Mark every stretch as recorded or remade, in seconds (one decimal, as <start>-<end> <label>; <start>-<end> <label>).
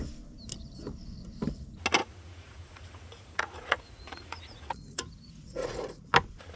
0.0-2.0 recorded; 2.0-6.0 remade; 6.0-6.6 recorded